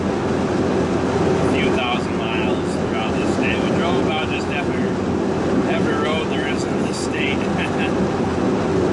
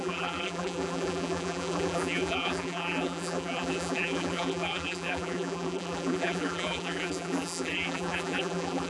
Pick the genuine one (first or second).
first